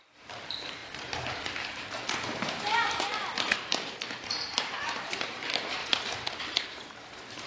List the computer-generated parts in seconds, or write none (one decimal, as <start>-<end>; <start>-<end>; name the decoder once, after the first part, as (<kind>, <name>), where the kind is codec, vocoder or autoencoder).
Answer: 0.0-5.8 (vocoder, BigVGAN v2); 6.4-7.5